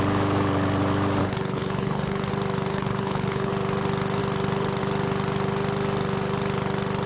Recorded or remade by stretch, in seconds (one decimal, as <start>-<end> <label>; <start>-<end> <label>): 0.0-1.2 recorded; 1.2-2.3 remade; 2.3-2.7 recorded; 2.7-3.5 remade; 3.5-7.1 recorded